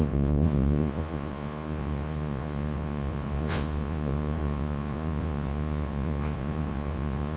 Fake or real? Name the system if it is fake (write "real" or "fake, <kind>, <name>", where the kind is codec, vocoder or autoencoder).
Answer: fake, vocoder, Vocos